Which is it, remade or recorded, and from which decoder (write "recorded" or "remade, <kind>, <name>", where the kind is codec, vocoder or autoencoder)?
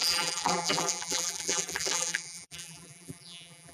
remade, vocoder, BigVGAN v2